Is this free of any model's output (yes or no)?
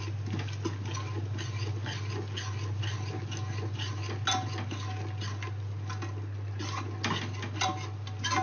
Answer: yes